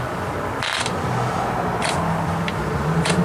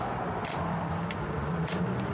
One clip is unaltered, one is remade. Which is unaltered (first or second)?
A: first